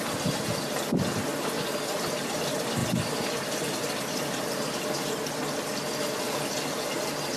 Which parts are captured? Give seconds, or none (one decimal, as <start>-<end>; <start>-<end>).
0.0-7.4

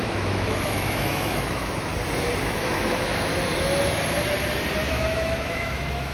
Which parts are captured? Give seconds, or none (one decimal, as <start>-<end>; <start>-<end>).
1.9-2.4; 3.3-4.9